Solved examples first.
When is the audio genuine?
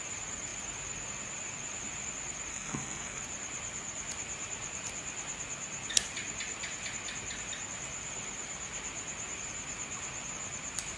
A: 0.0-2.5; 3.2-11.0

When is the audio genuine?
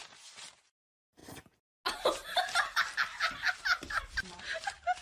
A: 1.2-2.0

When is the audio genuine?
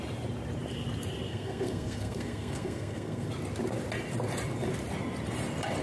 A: 0.0-1.3; 3.3-5.8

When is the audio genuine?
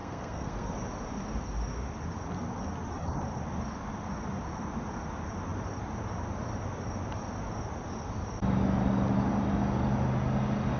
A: 0.7-10.8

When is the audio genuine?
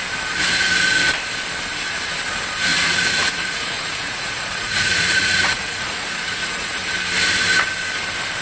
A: 0.0-2.7; 6.8-8.4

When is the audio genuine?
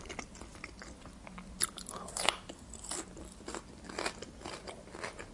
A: 0.0-5.3